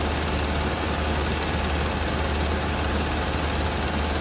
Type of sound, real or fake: real